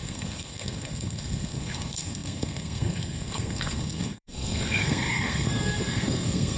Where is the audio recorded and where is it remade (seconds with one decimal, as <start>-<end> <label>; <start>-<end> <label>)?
0.0-6.6 remade